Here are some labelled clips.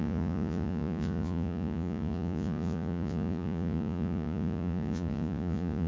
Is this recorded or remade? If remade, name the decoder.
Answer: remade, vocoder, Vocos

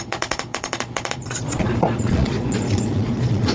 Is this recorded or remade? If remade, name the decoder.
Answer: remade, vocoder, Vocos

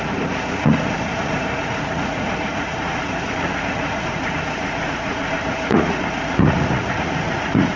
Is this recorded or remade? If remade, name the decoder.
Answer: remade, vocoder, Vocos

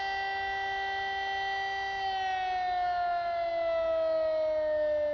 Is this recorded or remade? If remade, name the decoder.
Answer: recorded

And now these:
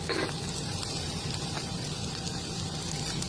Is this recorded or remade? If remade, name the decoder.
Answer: recorded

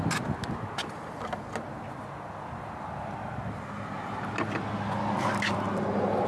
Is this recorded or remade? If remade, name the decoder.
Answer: recorded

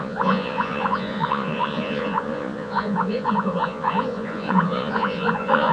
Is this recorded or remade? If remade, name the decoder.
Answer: remade, vocoder, Vocos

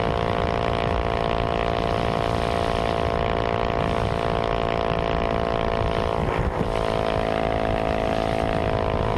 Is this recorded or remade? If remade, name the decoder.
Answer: recorded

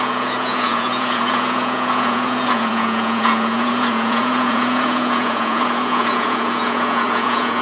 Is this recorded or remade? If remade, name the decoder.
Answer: remade, vocoder, Vocos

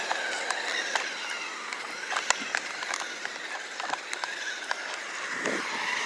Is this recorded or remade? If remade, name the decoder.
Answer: recorded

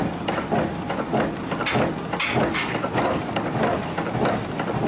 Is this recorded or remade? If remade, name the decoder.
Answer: recorded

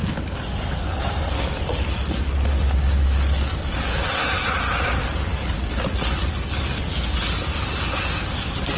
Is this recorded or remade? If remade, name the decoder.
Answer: recorded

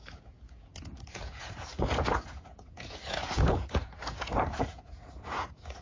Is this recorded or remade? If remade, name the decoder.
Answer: remade, vocoder, Vocos